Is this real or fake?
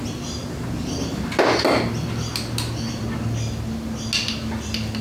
real